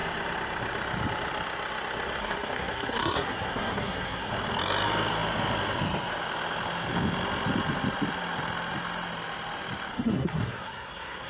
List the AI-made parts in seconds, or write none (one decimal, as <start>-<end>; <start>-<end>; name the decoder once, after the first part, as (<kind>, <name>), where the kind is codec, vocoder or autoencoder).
2.2-4.3 (codec, SNAC); 9.9-11.3